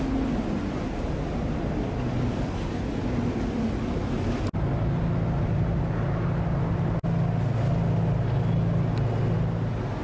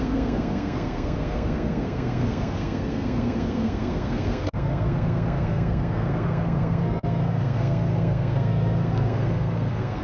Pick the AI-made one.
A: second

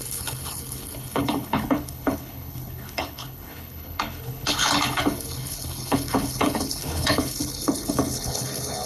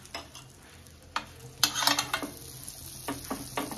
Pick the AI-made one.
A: first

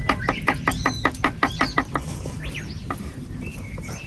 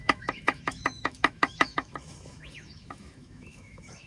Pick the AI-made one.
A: second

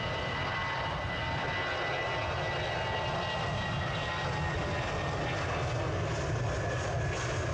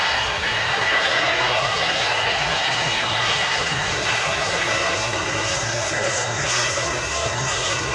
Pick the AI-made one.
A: second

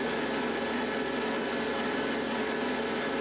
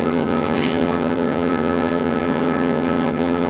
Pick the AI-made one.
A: second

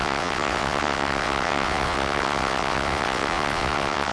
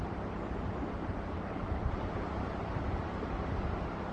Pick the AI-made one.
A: first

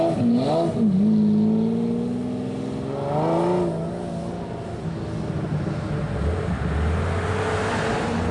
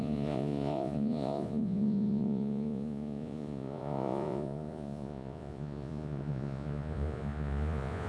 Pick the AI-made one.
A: second